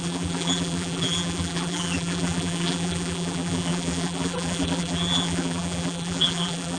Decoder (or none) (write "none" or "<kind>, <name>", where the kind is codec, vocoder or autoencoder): vocoder, BigVGAN v2